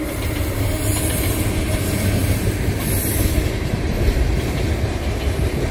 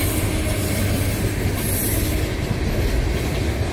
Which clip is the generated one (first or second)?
first